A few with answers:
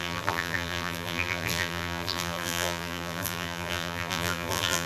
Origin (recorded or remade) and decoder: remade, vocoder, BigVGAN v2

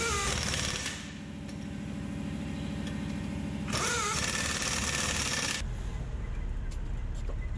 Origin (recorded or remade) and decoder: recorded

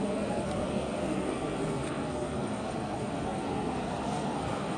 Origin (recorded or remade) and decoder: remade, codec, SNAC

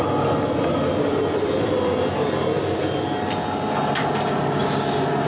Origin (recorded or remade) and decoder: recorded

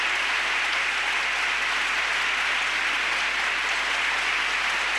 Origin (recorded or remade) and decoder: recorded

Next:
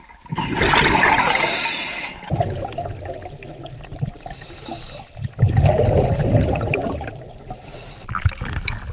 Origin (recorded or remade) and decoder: recorded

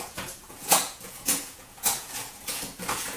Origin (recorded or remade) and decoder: remade, vocoder, Vocos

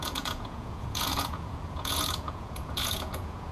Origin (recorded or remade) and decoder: remade, vocoder, Vocos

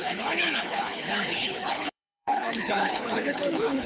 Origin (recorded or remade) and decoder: remade, codec, HILCodec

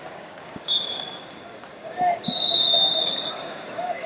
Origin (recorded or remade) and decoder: remade, codec, DAC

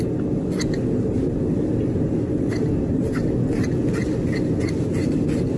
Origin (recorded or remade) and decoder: recorded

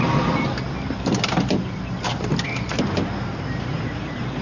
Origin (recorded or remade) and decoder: recorded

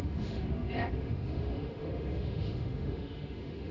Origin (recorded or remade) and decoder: remade, autoencoder, DAC-VAE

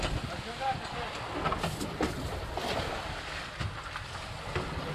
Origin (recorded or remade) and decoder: recorded